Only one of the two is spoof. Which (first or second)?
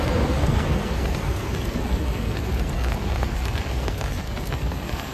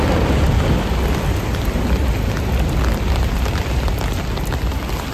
first